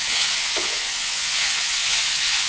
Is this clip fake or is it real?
fake